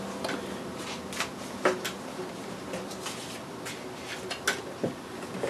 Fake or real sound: real